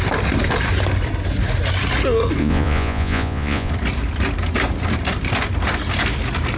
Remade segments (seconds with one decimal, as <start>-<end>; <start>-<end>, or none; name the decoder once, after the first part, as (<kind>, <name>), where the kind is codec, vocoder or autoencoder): 2.4-3.7 (vocoder, Vocos)